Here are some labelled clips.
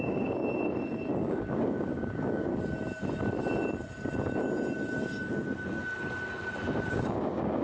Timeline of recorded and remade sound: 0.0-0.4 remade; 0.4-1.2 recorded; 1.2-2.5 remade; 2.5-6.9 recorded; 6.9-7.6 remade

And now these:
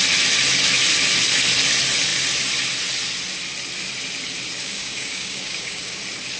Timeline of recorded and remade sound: 0.0-4.6 recorded; 4.6-6.0 remade; 6.0-6.4 recorded

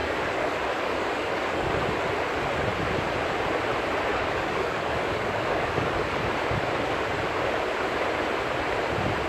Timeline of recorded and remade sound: 0.0-1.7 remade; 1.7-4.1 recorded; 4.1-6.2 remade; 6.2-9.3 recorded

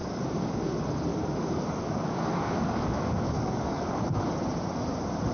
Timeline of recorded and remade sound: 0.0-0.7 remade; 0.7-1.1 recorded; 1.1-4.3 remade; 4.3-5.3 recorded

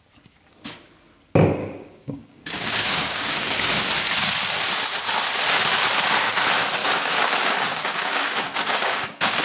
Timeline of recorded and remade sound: 0.0-1.6 recorded; 1.6-3.9 remade; 3.9-6.8 recorded; 6.8-9.4 remade

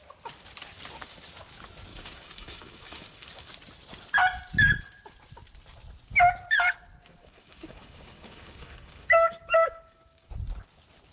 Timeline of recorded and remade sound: 0.0-1.9 recorded; 1.9-3.5 remade; 3.5-7.2 recorded; 7.2-10.3 remade; 10.3-11.1 recorded